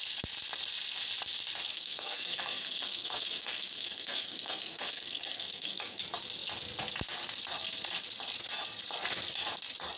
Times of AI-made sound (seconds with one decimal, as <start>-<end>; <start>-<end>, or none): 1.7-6.0